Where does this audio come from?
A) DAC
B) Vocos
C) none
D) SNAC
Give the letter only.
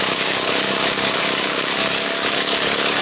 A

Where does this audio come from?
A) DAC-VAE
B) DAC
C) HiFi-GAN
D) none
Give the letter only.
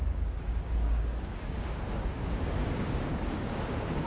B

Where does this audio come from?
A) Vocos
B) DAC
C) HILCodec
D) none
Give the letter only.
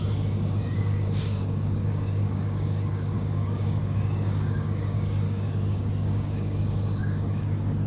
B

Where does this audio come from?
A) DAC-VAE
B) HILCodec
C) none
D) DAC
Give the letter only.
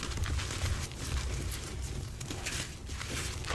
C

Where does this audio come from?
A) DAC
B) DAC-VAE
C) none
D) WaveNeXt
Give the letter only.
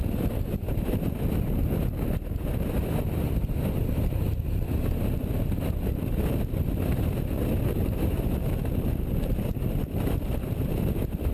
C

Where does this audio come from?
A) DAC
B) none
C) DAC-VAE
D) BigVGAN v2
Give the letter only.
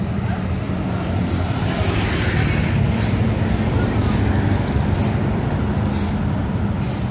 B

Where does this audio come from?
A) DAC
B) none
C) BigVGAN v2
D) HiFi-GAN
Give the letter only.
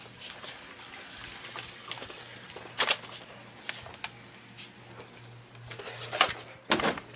B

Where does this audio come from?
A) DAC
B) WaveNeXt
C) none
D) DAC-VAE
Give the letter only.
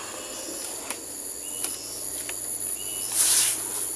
C